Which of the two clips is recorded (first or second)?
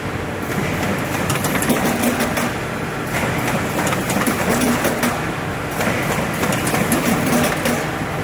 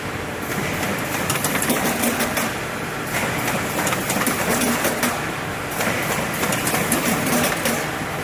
first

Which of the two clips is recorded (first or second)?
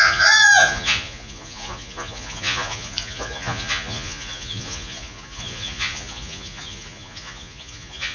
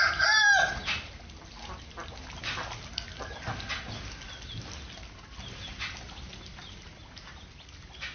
second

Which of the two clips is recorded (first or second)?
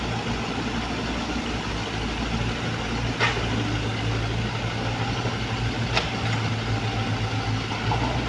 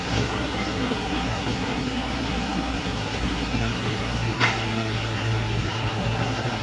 first